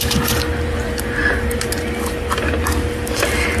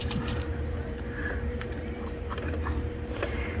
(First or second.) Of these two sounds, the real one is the first